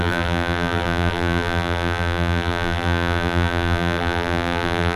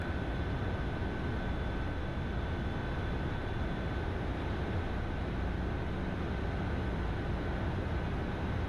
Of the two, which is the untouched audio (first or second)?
second